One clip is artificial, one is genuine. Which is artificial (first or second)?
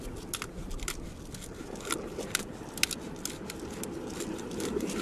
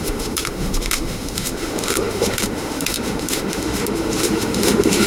second